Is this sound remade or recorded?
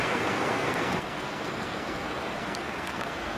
remade